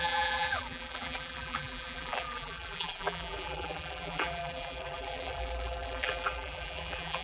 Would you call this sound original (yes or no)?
no